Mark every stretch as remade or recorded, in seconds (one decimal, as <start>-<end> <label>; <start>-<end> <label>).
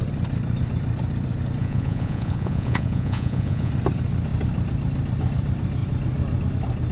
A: 0.0-1.6 recorded; 1.6-3.7 remade; 3.7-6.9 recorded